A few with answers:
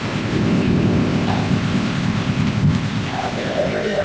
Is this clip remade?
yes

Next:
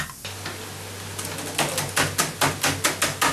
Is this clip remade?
no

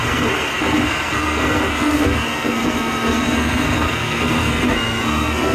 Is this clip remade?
yes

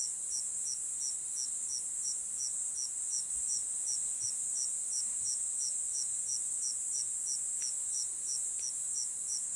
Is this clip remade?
no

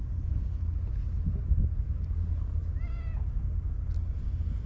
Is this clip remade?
no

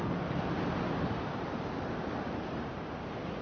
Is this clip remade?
no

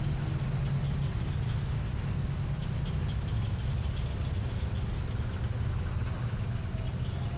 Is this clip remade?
no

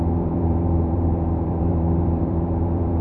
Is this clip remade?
yes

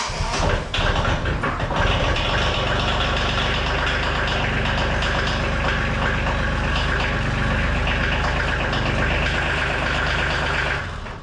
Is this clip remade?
no